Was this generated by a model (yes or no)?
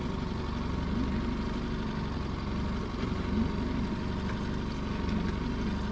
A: no